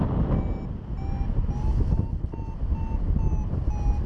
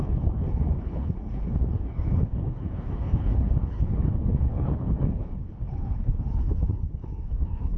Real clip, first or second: first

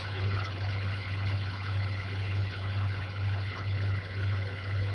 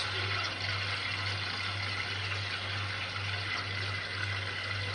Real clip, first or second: second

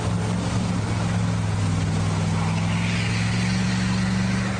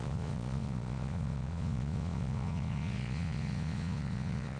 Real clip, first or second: first